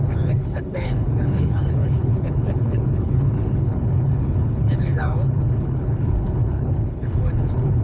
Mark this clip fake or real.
fake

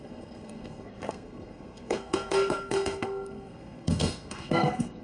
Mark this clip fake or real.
fake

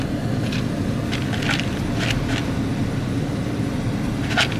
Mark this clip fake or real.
real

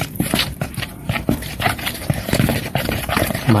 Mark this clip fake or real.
fake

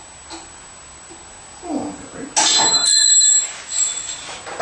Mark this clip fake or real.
real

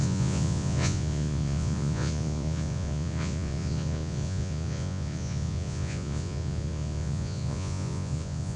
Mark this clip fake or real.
fake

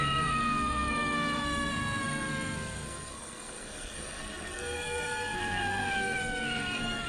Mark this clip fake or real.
fake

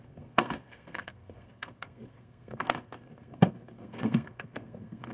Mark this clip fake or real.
fake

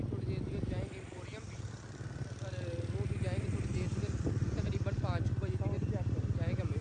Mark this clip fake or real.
real